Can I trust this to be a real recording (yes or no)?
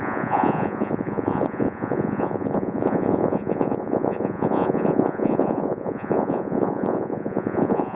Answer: no